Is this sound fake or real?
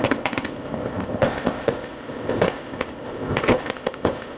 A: fake